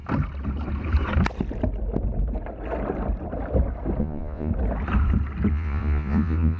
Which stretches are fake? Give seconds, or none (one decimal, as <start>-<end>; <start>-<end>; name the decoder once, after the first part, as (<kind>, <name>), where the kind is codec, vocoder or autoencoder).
4.0-4.5 (vocoder, Vocos); 5.5-6.6